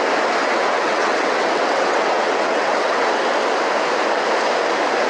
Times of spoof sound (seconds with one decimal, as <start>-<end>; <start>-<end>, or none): 0.4-3.2